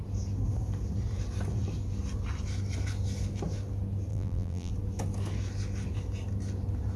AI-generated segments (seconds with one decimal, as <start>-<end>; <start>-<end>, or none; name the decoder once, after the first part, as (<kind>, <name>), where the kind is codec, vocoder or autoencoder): 4.1-4.7 (vocoder, BigVGAN v2)